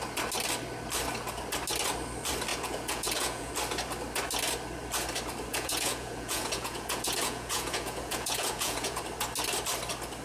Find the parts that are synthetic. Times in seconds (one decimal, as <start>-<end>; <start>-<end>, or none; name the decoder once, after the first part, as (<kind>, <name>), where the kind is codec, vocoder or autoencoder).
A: 2.5-3.5 (vocoder, Vocos); 5.5-9.0